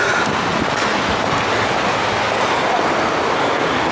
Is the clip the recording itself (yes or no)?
yes